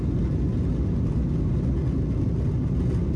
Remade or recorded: recorded